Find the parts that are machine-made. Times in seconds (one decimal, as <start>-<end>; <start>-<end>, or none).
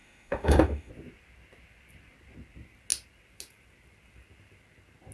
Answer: 0.0-0.9